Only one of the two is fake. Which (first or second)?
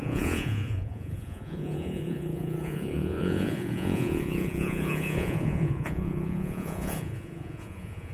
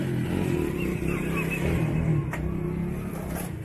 first